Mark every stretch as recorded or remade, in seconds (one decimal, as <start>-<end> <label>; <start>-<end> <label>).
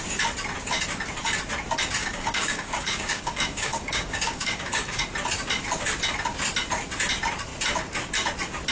0.0-2.0 recorded; 2.0-5.0 remade; 5.0-8.7 recorded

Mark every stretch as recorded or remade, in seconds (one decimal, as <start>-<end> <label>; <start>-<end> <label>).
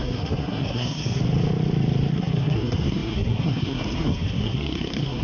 0.0-1.2 remade; 1.2-2.1 recorded; 2.1-5.2 remade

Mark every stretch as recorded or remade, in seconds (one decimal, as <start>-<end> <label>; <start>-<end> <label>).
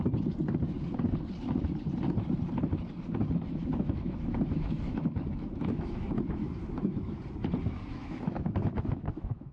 0.0-3.6 recorded; 3.6-7.2 remade; 7.2-7.9 recorded; 7.9-9.5 remade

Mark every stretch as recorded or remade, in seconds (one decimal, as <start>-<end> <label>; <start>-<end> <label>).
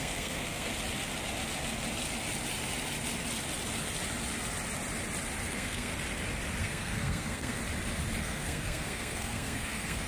0.0-0.7 remade; 0.7-5.5 recorded; 5.5-5.9 remade; 5.9-6.6 recorded; 6.6-7.6 remade; 7.6-8.2 recorded; 8.2-10.1 remade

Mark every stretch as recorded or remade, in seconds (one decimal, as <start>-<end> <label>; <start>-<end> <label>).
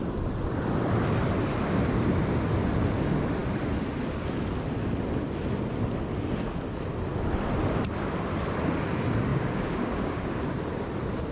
0.0-9.3 recorded; 9.3-10.4 remade; 10.4-11.3 recorded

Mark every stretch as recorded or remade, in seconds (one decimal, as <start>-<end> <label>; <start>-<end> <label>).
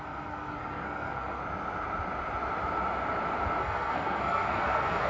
0.0-1.4 remade; 1.4-3.6 recorded; 3.6-5.1 remade